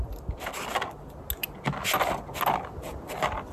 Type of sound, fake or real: real